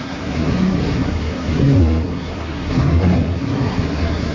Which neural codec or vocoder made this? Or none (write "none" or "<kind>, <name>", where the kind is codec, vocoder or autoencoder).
codec, SNAC